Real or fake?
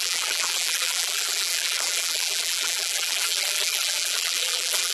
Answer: fake